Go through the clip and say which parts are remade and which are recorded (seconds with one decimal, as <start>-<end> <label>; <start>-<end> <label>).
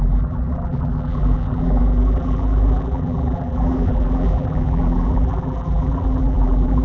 0.0-6.8 remade